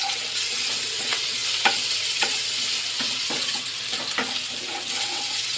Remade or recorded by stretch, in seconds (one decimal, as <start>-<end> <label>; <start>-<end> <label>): 0.0-1.4 remade; 1.4-1.9 recorded; 1.9-2.3 remade; 2.3-3.0 recorded; 3.0-3.7 remade; 3.7-5.0 recorded; 5.0-5.6 remade